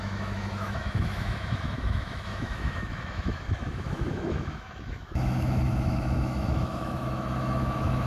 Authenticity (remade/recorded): remade